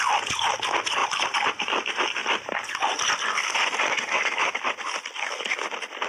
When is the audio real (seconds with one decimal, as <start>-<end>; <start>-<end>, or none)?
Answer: 0.0-6.1